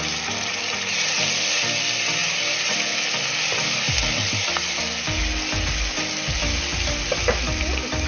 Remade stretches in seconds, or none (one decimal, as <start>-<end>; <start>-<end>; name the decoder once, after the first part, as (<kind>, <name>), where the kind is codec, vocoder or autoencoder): none